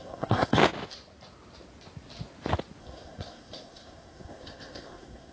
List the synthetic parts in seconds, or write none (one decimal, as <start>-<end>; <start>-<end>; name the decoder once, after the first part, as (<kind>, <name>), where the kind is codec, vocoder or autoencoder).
0.0-0.6 (codec, SNAC); 2.8-5.3